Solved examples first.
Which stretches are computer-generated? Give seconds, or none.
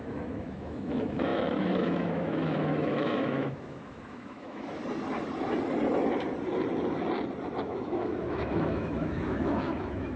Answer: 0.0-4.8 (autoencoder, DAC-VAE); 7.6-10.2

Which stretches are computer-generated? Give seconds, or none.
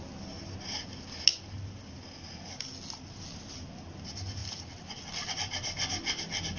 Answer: none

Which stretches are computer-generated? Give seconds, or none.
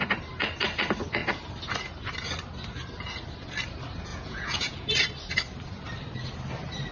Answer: 4.1-4.9 (vocoder, Vocos)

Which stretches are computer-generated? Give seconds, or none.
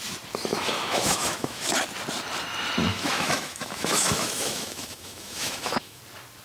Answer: 0.5-1.7 (autoencoder, DAC-VAE); 2.9-6.0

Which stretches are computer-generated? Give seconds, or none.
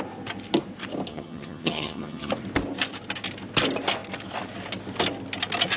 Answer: 1.1-2.3 (vocoder, HiFi-GAN)